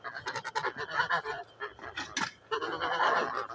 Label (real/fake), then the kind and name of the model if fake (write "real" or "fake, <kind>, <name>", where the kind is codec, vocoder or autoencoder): real